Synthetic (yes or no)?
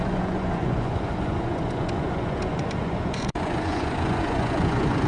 yes